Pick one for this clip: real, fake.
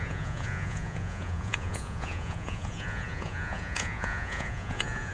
fake